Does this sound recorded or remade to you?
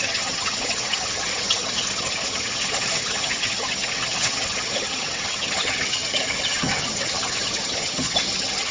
remade